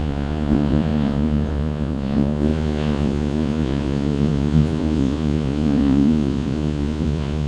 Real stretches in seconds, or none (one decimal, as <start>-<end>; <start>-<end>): none